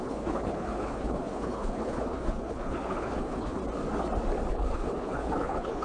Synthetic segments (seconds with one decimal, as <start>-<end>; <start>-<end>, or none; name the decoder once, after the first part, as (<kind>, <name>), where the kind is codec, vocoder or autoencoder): 0.0-3.6 (codec, HILCodec); 4.5-5.8